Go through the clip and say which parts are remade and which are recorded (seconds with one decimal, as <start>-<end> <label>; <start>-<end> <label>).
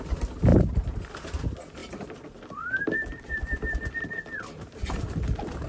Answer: 0.0-0.5 recorded; 0.5-1.0 remade; 1.0-1.8 recorded; 1.8-3.9 remade; 3.9-5.7 recorded